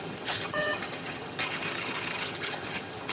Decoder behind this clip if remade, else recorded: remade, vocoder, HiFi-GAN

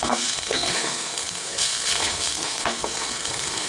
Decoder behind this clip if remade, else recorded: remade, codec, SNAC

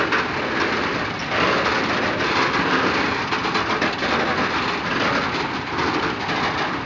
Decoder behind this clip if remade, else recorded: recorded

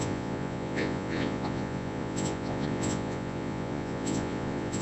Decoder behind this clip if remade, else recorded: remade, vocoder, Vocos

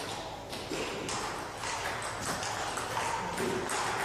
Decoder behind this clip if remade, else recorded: recorded